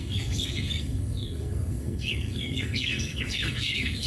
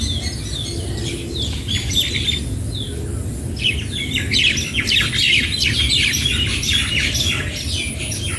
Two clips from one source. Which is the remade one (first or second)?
first